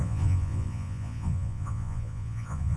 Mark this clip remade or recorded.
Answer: remade